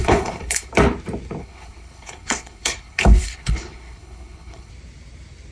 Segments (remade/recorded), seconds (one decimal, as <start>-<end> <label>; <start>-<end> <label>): 0.0-0.7 remade; 0.7-1.4 recorded; 1.4-4.7 remade; 4.7-5.5 recorded